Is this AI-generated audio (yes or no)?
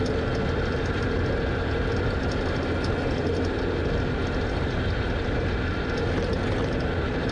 no